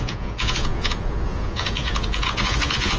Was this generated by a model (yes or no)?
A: yes